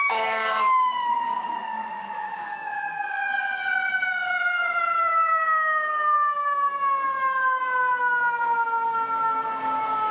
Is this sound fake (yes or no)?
yes